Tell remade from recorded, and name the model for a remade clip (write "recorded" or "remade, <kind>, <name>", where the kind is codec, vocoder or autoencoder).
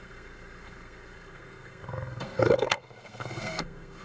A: remade, codec, SNAC